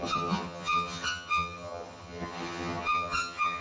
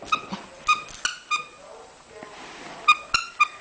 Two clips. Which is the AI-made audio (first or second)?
first